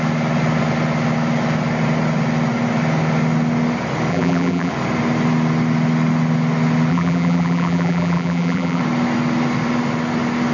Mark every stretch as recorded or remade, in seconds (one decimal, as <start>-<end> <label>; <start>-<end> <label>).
0.0-4.1 recorded; 4.1-4.7 remade; 4.7-6.9 recorded; 6.9-8.8 remade; 8.8-10.5 recorded